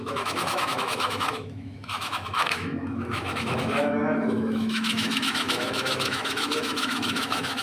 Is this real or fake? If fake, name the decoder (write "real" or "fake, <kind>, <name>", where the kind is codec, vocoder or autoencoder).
fake, autoencoder, DAC-VAE